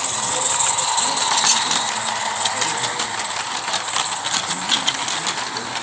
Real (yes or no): yes